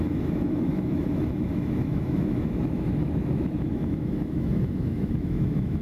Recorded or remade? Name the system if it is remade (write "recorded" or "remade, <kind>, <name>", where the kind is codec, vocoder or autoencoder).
remade, autoencoder, DAC-VAE